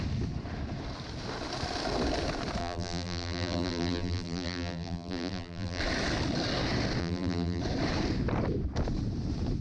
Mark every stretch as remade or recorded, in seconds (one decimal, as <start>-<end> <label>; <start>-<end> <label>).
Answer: 0.0-2.6 recorded; 2.6-5.8 remade; 5.8-7.0 recorded; 7.0-7.6 remade; 7.6-9.6 recorded

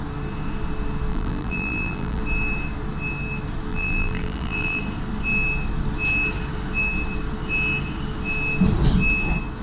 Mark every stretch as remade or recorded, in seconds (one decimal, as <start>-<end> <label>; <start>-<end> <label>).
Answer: 0.0-1.1 recorded; 1.1-2.2 remade; 2.2-3.7 recorded; 3.7-4.8 remade; 4.8-9.6 recorded

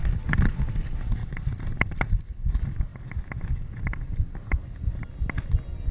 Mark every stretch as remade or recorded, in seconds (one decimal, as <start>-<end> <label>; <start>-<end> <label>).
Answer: 0.0-1.2 recorded; 1.2-2.1 remade; 2.1-5.9 recorded

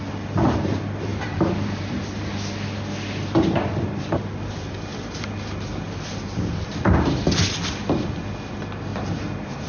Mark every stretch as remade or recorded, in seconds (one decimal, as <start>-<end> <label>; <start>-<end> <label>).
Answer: 0.0-1.1 recorded; 1.1-1.8 remade; 1.8-8.9 recorded; 8.9-9.7 remade

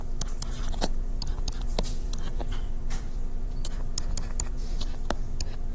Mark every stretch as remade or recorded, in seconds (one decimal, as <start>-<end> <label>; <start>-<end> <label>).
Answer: 0.0-4.9 remade; 4.9-5.7 recorded

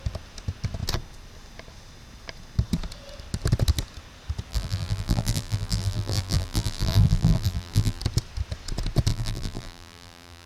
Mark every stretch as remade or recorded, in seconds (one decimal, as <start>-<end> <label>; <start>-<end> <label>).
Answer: 0.0-4.5 recorded; 4.5-8.0 remade; 8.0-9.1 recorded; 9.1-10.5 remade

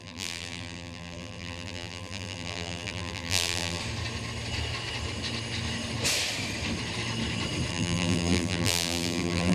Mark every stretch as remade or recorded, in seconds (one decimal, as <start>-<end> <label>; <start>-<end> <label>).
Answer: 0.0-3.8 remade; 3.8-7.7 recorded; 7.7-9.5 remade